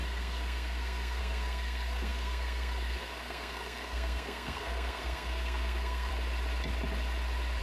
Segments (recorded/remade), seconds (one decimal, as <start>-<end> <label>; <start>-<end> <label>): 0.0-6.1 remade; 6.1-7.6 recorded